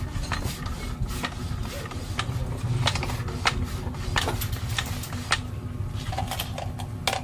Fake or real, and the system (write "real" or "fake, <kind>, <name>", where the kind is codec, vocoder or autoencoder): real